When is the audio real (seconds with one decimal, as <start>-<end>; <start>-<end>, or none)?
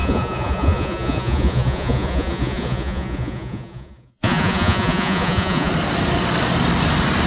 5.7-7.3